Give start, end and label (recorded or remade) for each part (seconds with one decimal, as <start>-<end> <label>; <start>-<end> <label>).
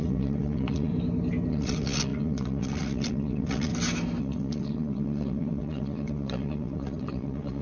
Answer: 0.0-0.9 remade; 0.9-1.5 recorded; 1.5-3.7 remade; 3.7-4.2 recorded; 4.2-7.6 remade